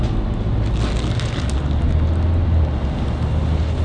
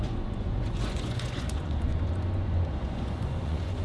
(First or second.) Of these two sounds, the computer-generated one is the second